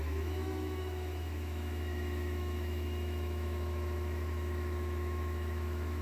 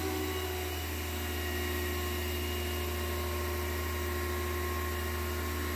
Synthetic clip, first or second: first